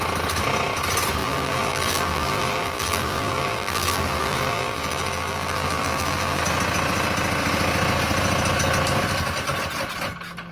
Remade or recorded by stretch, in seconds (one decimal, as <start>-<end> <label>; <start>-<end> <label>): 0.0-1.2 recorded; 1.2-6.4 remade; 6.4-10.5 recorded